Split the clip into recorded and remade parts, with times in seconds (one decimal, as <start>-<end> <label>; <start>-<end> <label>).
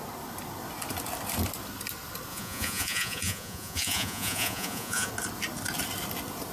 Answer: 0.0-2.3 recorded; 2.3-5.1 remade; 5.1-6.5 recorded